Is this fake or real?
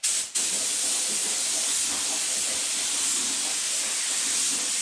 real